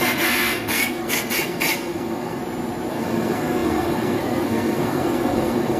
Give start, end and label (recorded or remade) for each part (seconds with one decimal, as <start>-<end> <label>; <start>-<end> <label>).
0.0-2.4 remade; 2.4-2.9 recorded; 2.9-5.8 remade